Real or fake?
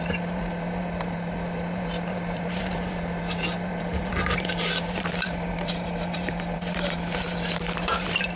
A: fake